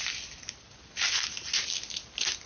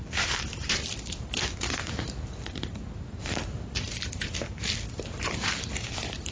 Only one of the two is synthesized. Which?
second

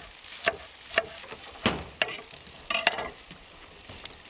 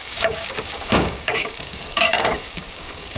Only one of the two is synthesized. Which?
second